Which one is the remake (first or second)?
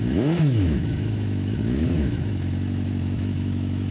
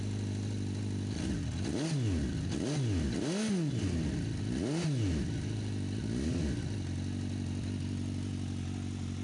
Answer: first